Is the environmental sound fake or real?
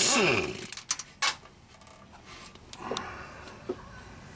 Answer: real